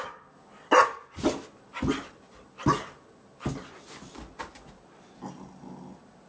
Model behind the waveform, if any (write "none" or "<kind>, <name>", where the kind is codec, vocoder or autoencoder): none